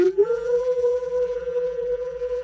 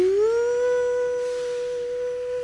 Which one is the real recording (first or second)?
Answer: second